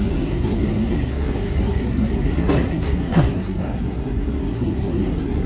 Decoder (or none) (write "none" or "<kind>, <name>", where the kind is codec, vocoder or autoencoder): codec, SNAC